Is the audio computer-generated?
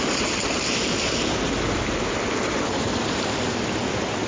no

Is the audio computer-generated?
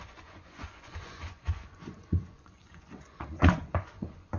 yes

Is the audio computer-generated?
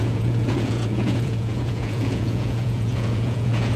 yes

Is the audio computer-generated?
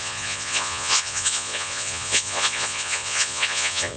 yes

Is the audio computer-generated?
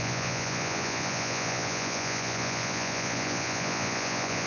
yes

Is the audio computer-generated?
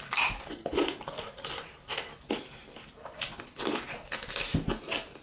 no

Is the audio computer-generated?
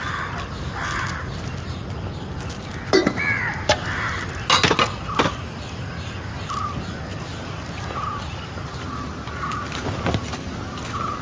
no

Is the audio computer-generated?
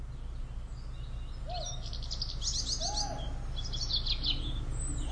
no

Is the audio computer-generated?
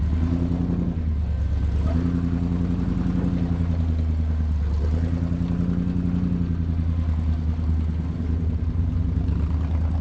no